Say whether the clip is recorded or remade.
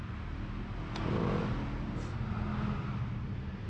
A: recorded